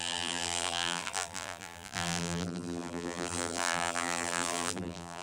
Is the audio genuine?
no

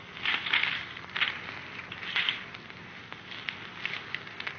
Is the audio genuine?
yes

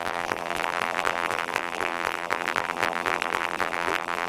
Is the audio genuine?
no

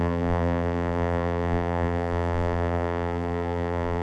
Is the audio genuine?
no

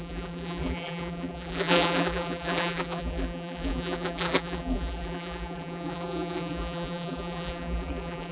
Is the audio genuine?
no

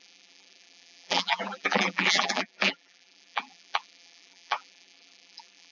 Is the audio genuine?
no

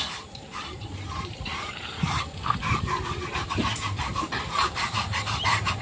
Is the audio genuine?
no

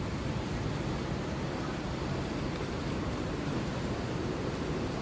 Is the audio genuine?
no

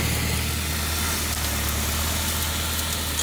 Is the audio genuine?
yes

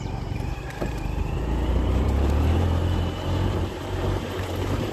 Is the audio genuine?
no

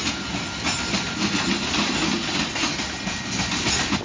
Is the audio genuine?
yes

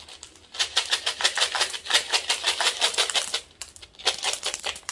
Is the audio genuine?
no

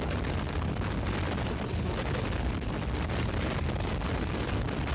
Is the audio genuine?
yes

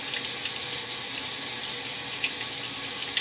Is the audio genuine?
yes